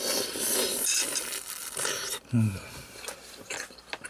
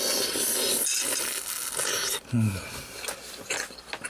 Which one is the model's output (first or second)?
first